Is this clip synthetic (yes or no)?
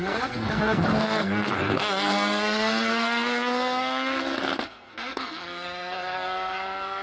yes